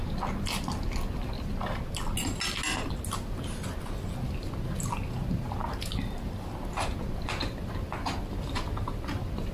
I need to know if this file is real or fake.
real